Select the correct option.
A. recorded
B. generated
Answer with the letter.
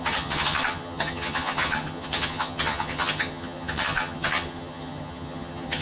B